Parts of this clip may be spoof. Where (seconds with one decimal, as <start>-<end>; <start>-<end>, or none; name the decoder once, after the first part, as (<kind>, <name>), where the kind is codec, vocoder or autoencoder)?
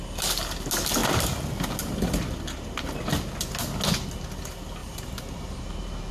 4.8-6.1 (vocoder, BigVGAN v2)